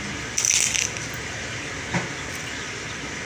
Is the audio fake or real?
real